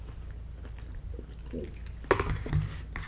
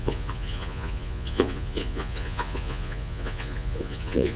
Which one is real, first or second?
first